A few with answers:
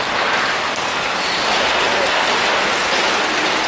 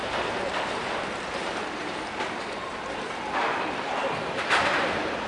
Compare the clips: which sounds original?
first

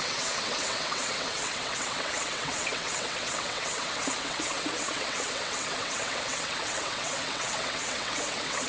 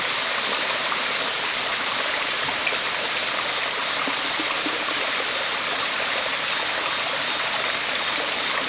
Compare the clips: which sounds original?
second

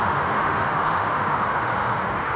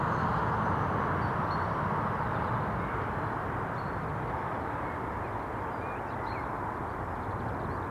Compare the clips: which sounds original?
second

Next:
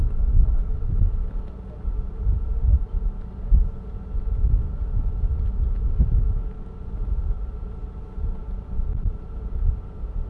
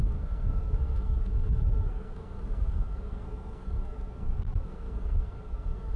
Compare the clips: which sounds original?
first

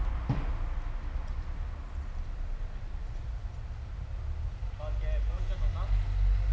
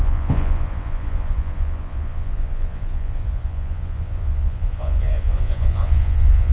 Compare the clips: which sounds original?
first